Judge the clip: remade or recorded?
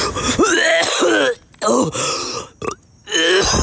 recorded